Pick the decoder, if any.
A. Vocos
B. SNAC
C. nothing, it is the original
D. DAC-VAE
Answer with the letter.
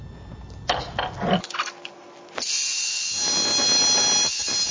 C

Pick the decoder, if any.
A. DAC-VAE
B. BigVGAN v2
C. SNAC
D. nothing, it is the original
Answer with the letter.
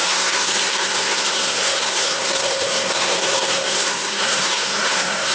C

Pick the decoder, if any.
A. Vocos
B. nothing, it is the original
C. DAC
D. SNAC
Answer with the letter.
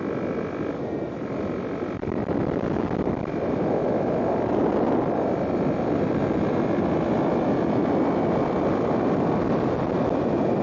B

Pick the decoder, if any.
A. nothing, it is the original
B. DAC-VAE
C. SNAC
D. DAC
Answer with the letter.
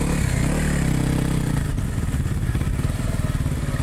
A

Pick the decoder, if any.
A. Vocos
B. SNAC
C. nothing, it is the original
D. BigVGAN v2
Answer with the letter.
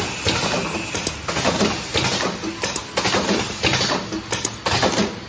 C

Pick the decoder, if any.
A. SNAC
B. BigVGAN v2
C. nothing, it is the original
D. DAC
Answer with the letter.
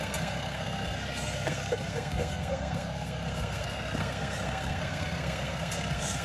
A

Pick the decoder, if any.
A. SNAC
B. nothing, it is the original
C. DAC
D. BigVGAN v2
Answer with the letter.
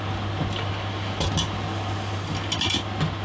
B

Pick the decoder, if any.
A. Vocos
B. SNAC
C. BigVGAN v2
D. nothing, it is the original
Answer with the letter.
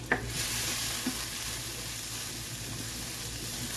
D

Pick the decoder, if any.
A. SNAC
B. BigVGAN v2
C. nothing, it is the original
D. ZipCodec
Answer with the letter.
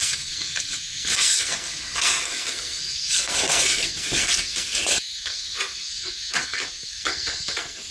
A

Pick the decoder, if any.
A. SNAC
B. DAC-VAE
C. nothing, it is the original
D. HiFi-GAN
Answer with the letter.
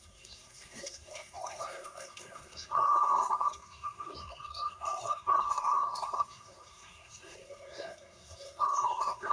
A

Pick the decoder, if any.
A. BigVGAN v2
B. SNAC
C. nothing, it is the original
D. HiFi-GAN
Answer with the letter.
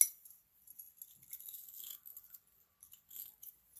C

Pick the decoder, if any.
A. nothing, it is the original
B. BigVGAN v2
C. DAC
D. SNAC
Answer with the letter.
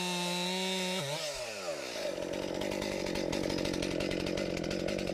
A